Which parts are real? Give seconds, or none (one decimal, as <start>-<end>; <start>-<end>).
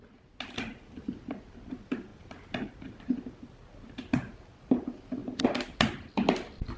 0.0-6.8